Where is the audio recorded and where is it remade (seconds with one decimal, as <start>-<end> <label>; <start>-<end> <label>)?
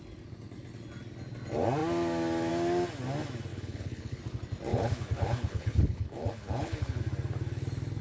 0.0-3.5 recorded; 3.5-4.2 remade; 4.2-4.7 recorded; 4.7-7.0 remade; 7.0-8.0 recorded